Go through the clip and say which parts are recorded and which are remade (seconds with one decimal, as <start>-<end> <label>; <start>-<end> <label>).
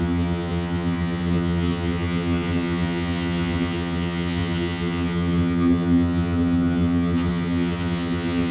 0.0-8.5 remade